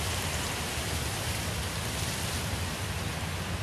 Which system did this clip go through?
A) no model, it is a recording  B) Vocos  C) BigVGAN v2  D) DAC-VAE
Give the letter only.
C